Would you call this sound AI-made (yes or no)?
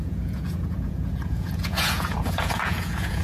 yes